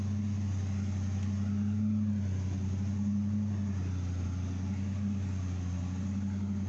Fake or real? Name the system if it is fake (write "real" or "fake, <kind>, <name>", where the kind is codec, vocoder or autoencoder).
real